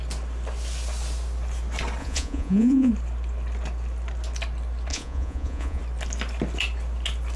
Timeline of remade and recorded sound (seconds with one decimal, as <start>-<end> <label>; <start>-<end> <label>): 0.0-2.0 recorded; 2.0-2.9 remade; 2.9-4.9 recorded; 4.9-5.8 remade; 5.8-7.4 recorded